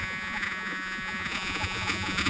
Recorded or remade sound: remade